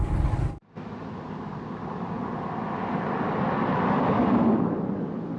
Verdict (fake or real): real